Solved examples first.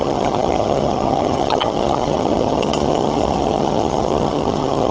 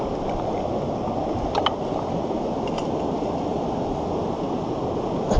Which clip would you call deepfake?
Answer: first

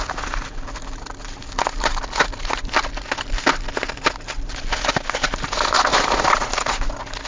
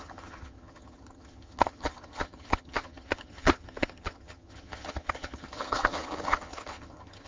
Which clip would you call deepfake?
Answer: second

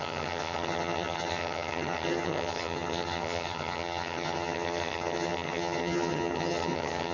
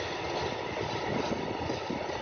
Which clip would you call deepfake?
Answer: first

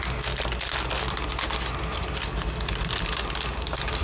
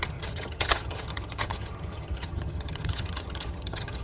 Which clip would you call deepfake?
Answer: second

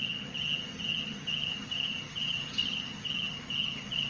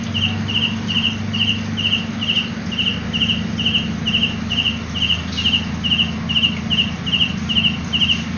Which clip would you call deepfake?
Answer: first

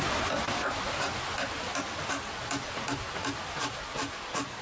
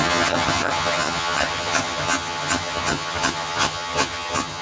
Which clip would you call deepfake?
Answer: second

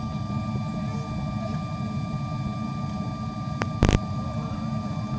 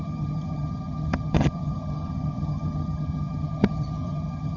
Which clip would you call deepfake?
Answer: second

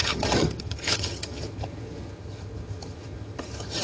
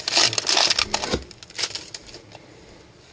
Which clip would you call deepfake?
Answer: first